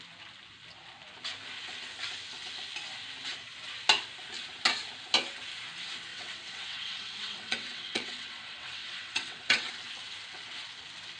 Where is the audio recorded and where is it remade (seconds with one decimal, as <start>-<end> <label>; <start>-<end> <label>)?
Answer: 0.0-6.1 recorded; 6.1-9.7 remade; 9.7-11.2 recorded